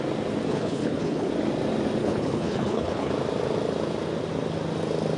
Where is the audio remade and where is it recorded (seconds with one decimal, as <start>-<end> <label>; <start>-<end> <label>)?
0.0-0.5 recorded; 0.5-1.3 remade; 1.3-2.0 recorded; 2.0-3.1 remade; 3.1-5.2 recorded